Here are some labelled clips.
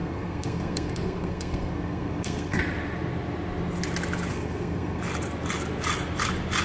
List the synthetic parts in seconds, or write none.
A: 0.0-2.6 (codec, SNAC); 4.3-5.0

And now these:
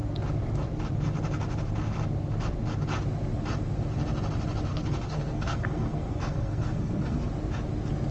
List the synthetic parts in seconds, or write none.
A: 4.7-7.3 (codec, SNAC)

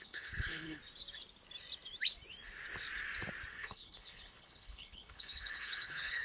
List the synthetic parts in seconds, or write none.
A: 0.0-0.8 (codec, HILCodec); 3.5-6.2

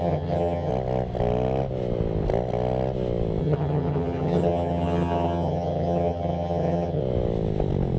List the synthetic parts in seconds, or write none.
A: 0.0-0.7 (vocoder, HiFi-GAN); 3.4-7.0